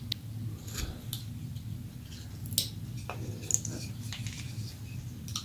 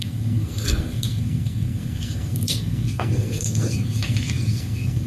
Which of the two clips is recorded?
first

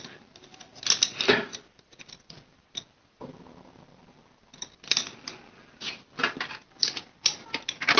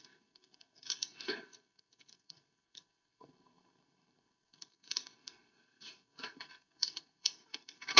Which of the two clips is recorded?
first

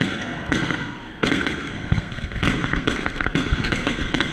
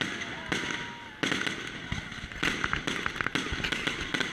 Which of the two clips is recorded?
second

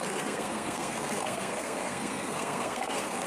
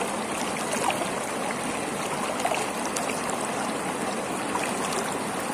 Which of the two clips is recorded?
second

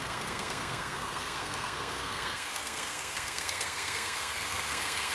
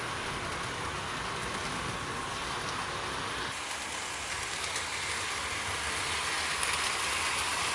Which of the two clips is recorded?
second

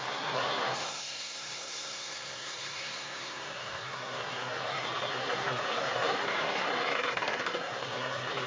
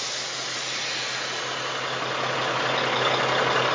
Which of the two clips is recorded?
second